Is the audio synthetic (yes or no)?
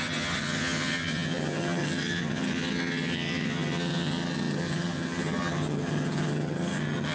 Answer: yes